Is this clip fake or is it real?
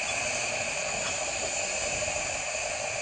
real